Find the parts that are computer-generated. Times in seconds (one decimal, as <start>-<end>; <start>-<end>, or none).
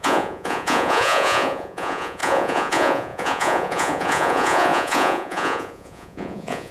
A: 0.0-6.7